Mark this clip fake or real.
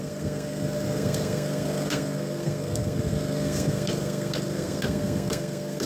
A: fake